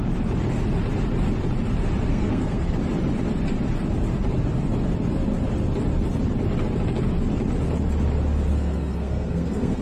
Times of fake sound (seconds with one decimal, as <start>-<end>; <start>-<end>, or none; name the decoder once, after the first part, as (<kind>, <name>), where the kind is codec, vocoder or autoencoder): 2.1-2.8 (codec, SNAC); 8.5-9.8